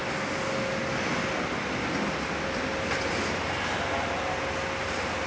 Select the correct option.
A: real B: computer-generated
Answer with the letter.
A